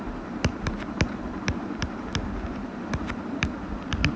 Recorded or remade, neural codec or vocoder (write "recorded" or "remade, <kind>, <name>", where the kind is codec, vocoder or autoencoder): recorded